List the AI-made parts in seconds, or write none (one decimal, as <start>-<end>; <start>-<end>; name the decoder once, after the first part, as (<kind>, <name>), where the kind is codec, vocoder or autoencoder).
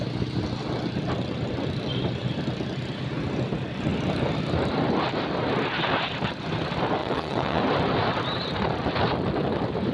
7.0-7.6 (vocoder, WaveNeXt)